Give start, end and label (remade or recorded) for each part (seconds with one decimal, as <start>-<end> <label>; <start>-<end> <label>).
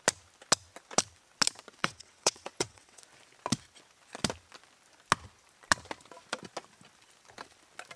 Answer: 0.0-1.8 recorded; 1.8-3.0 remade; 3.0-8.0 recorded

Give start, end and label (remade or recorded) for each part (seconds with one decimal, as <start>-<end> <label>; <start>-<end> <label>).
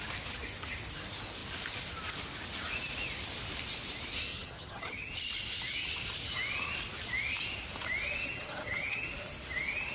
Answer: 0.0-4.3 recorded; 4.3-5.1 remade; 5.1-8.2 recorded; 8.2-9.1 remade; 9.1-9.9 recorded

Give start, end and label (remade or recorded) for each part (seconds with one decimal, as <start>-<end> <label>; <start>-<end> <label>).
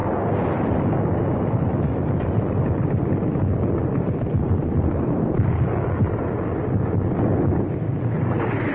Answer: 0.0-8.7 recorded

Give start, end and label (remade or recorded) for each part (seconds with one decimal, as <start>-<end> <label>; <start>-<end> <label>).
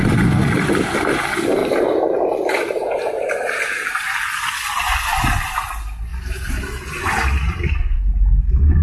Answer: 0.0-1.6 recorded; 1.6-3.5 remade; 3.5-6.1 recorded; 6.1-7.7 remade; 7.7-8.8 recorded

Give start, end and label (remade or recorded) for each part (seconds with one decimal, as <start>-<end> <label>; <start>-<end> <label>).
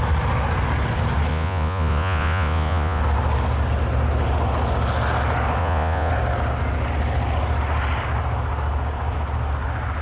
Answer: 0.0-1.3 recorded; 1.3-3.0 remade; 3.0-5.6 recorded; 5.6-6.1 remade; 6.1-10.0 recorded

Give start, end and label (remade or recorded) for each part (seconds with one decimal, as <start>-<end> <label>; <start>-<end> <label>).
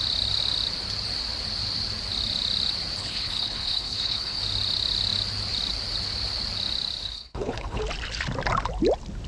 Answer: 0.0-3.0 recorded; 3.0-4.4 remade; 4.4-7.0 recorded; 7.0-7.8 remade; 7.8-9.3 recorded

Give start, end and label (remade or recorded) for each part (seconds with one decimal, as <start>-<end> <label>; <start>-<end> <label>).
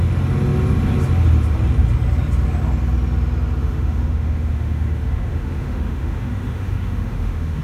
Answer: 0.0-3.6 recorded; 3.6-7.6 remade